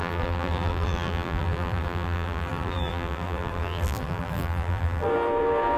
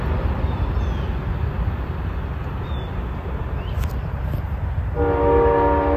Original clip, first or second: second